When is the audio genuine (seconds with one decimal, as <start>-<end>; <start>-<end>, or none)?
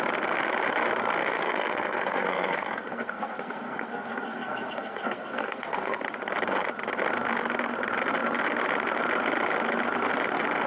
0.0-1.2; 6.0-10.7